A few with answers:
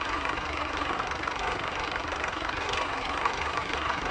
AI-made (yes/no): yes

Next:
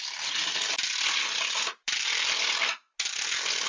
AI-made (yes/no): no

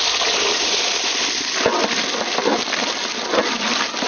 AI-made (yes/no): no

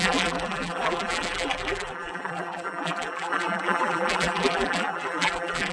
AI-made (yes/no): yes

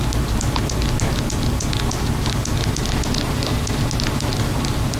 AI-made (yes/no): no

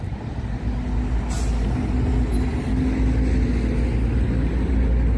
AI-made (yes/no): no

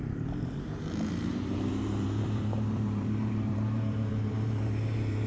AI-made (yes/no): yes